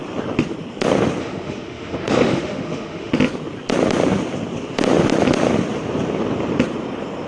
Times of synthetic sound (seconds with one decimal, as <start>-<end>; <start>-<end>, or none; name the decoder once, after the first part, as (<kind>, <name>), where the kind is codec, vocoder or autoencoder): 1.2-3.1 (autoencoder, DAC-VAE)